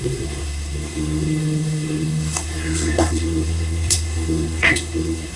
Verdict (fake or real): fake